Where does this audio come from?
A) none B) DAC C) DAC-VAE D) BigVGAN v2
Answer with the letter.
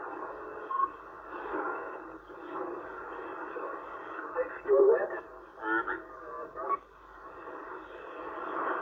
B